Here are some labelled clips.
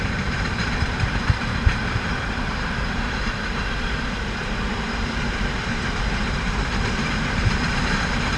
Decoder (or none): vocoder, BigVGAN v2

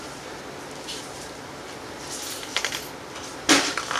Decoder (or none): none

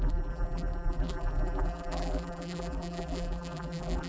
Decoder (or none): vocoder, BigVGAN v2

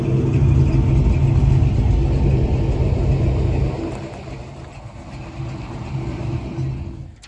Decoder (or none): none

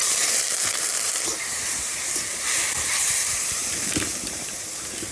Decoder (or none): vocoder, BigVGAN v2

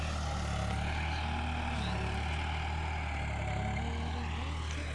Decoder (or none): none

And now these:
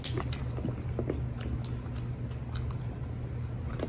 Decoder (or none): none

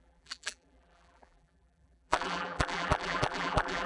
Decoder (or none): vocoder, BigVGAN v2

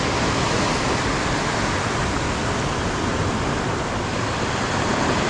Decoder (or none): none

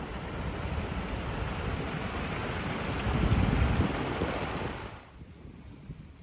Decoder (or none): none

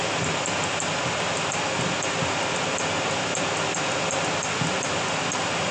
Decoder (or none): none